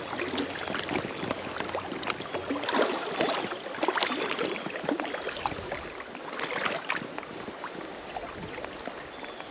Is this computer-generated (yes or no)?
no